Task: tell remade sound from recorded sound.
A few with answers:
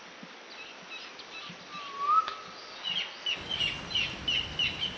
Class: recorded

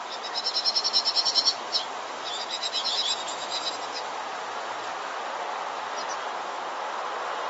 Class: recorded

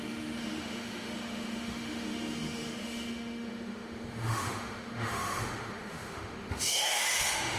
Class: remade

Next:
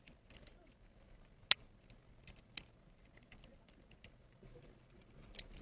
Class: recorded